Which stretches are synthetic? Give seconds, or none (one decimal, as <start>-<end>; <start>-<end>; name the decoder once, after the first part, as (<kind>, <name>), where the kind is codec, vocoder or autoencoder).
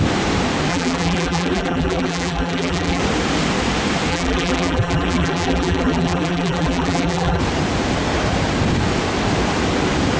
0.7-3.0 (vocoder, BigVGAN v2); 4.1-7.4